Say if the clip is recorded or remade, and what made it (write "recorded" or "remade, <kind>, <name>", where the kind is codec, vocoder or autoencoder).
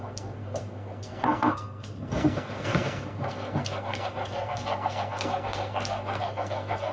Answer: remade, codec, SNAC